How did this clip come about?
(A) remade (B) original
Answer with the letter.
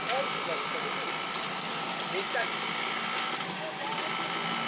B